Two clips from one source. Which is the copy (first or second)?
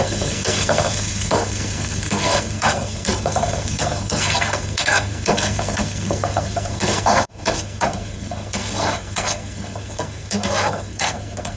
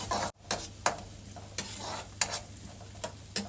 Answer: first